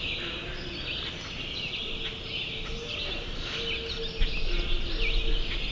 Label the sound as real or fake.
real